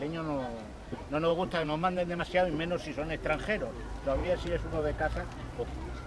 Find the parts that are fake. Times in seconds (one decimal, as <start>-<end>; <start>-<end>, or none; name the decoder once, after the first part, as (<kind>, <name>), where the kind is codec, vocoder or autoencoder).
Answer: 1.3-2.2 (vocoder, BigVGAN v2); 4.2-6.1